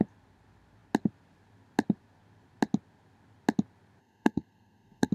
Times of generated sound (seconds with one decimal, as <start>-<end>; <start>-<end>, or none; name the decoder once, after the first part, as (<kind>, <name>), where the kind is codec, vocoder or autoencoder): 4.0-5.1 (codec, SNAC)